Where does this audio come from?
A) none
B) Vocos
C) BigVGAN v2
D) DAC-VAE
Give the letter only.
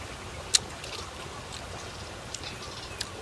A